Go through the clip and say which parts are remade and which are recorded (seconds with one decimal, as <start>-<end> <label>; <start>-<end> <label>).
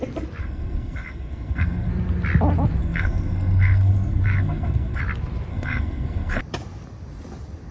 0.0-0.4 recorded; 0.4-1.9 remade; 1.9-2.8 recorded; 2.8-5.0 remade; 5.0-5.5 recorded; 5.5-6.4 remade; 6.4-7.7 recorded